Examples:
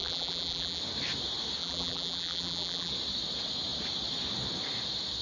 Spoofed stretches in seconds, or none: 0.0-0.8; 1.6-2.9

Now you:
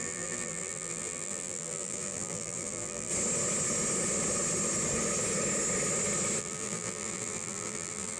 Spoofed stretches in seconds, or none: 0.0-3.1; 6.4-8.2

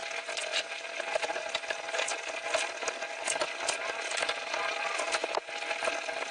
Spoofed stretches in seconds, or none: none

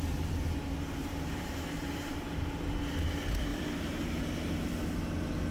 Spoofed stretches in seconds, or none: 1.0-2.2; 3.5-4.5

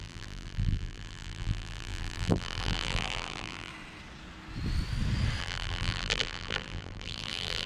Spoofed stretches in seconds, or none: 0.0-3.7; 5.4-7.7